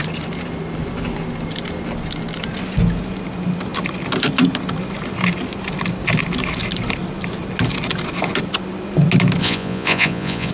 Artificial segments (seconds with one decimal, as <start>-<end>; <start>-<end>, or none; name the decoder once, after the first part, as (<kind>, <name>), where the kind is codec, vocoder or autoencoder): 9.4-10.5 (vocoder, Vocos)